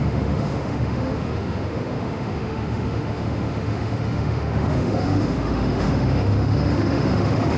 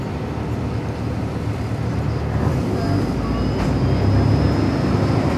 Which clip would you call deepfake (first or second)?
first